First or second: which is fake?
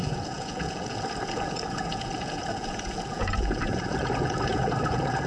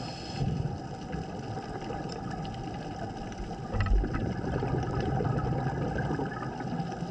first